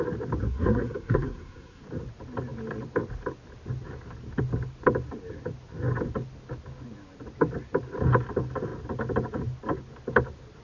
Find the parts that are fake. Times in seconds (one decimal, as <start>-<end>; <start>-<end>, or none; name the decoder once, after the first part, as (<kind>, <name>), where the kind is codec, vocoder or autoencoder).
0.4-1.8 (codec, SNAC)

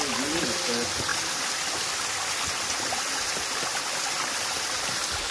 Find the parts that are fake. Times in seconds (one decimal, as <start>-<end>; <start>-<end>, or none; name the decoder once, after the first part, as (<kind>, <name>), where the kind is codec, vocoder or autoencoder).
none

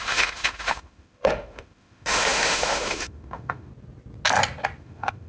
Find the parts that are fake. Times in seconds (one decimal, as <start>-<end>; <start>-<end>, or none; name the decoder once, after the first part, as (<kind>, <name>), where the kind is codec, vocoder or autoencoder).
0.0-3.7 (autoencoder, DAC-VAE); 4.8-5.3